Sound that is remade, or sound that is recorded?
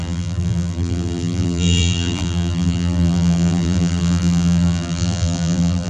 remade